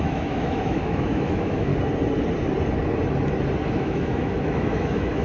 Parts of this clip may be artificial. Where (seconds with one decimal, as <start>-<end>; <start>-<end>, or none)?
0.0-1.7; 3.7-5.2